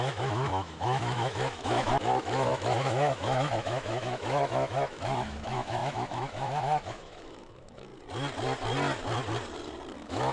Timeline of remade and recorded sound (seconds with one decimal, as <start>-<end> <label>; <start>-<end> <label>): 0.0-7.9 remade; 7.9-9.9 recorded; 9.9-10.3 remade

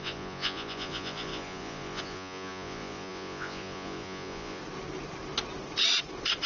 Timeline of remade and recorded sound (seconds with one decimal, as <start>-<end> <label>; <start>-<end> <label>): 0.0-4.6 remade; 4.6-6.5 recorded

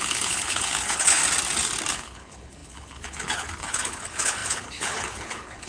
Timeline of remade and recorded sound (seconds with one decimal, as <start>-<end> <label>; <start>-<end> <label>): 0.0-1.2 remade; 1.2-1.9 recorded; 1.9-5.7 remade

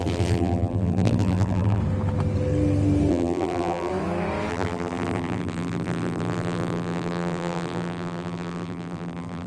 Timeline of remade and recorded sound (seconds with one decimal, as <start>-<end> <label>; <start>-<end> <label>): 0.0-1.8 remade; 1.8-3.1 recorded; 3.1-3.9 remade; 3.9-4.5 recorded; 4.5-9.5 remade

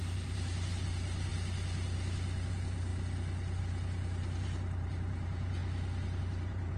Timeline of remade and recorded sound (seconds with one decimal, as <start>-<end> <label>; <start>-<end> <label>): 0.0-1.3 remade; 1.3-2.5 recorded; 2.5-2.9 remade; 2.9-3.6 recorded; 3.6-5.6 remade; 5.6-6.2 recorded; 6.2-6.8 remade

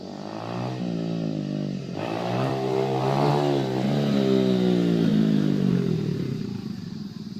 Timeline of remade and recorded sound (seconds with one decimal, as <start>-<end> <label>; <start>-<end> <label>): 0.0-1.8 recorded; 1.8-3.3 remade; 3.3-5.1 recorded; 5.1-7.4 remade

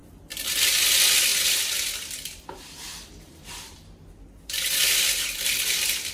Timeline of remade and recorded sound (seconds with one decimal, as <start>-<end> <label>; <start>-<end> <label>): 0.0-1.3 recorded; 1.3-5.0 remade; 5.0-6.1 recorded